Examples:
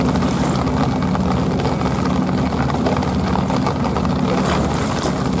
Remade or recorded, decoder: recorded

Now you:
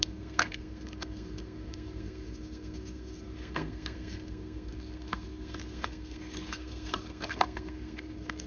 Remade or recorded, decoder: remade, codec, SNAC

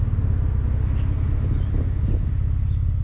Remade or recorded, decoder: recorded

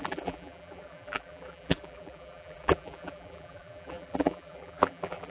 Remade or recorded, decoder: remade, vocoder, BigVGAN v2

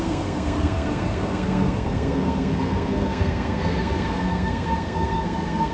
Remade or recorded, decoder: remade, codec, SNAC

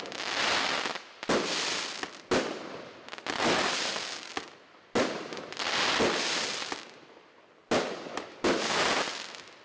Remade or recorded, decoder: recorded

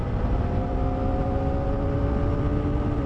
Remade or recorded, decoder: recorded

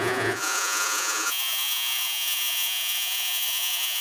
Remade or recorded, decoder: remade, vocoder, Vocos